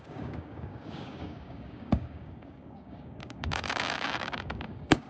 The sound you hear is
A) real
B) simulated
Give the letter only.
B